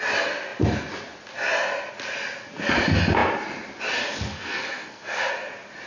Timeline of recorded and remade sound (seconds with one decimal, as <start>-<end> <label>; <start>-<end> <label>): 0.0-4.3 recorded; 4.3-5.3 remade; 5.3-5.9 recorded